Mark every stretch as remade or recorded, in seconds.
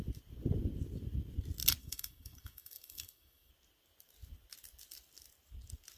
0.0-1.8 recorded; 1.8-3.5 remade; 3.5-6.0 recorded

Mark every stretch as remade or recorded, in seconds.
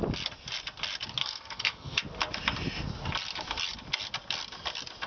0.0-1.2 recorded; 1.2-2.0 remade; 2.0-5.1 recorded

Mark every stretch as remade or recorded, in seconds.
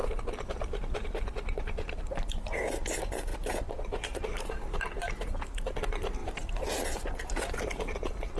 0.0-2.0 remade; 2.0-3.3 recorded; 3.3-5.8 remade; 5.8-6.2 recorded; 6.2-7.7 remade; 7.7-8.4 recorded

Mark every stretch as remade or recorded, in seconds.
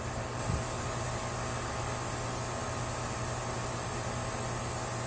0.0-5.1 recorded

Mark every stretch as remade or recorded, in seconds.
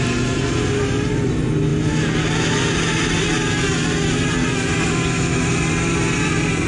0.0-6.7 recorded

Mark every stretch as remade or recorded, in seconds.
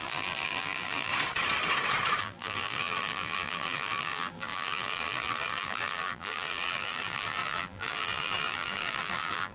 0.0-1.1 remade; 1.1-2.2 recorded; 2.2-9.5 remade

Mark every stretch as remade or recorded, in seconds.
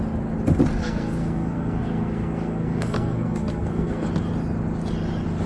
0.0-0.8 recorded; 0.8-4.1 remade; 4.1-5.5 recorded